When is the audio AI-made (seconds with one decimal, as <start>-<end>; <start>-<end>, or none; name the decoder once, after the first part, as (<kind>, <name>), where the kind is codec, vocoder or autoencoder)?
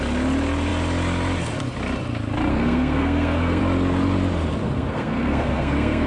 2.5-3.6 (codec, SNAC); 4.6-6.1